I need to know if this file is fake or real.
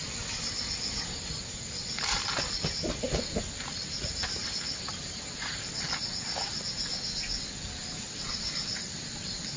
real